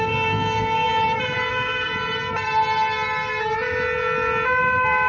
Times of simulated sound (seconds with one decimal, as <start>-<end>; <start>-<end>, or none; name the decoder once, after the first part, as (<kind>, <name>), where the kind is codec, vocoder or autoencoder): 0.0-0.9 (codec, SNAC); 1.5-1.9